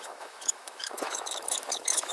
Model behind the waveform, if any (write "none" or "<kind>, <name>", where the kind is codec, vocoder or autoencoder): autoencoder, DAC-VAE